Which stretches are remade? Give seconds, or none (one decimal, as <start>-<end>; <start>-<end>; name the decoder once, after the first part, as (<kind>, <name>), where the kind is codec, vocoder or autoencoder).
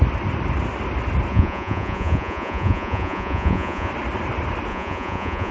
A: 1.3-3.9 (vocoder, Vocos); 4.7-5.5